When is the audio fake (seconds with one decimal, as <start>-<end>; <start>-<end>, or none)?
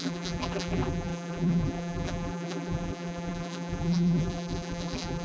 0.0-5.2